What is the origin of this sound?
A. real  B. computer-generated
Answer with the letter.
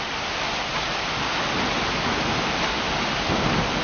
A